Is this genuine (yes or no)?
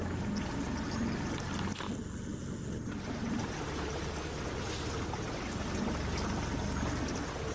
yes